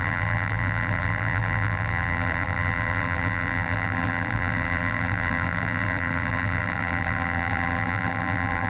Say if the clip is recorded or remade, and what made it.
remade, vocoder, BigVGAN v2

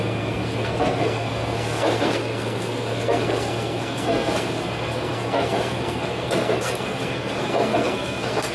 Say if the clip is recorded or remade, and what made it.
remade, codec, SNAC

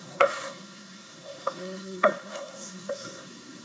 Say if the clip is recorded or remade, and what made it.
remade, codec, SNAC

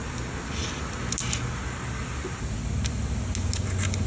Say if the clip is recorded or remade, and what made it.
recorded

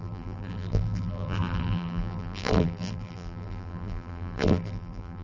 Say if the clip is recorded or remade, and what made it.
remade, vocoder, BigVGAN v2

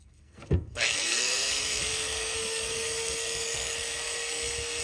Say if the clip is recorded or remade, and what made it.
remade, codec, SNAC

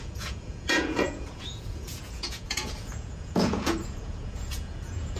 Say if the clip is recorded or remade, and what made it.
remade, vocoder, Vocos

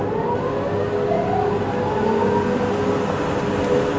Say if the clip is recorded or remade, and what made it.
recorded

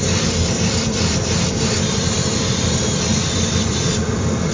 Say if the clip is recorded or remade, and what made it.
remade, vocoder, BigVGAN v2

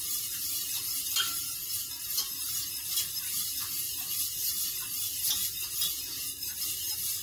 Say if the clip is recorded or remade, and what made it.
recorded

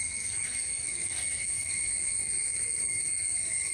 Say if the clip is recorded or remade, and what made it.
remade, codec, SNAC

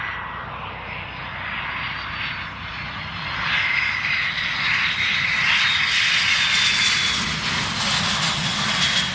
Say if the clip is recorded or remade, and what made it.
recorded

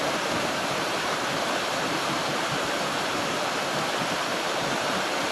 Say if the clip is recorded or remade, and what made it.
remade, vocoder, BigVGAN v2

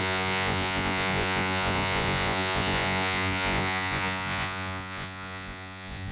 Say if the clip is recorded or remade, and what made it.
remade, vocoder, Vocos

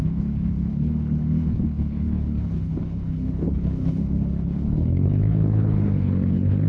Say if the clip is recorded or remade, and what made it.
remade, codec, HILCodec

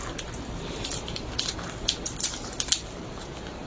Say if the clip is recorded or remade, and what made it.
recorded